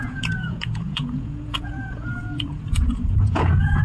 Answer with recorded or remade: remade